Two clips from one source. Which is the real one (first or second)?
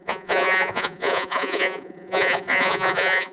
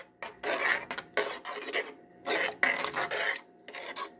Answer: second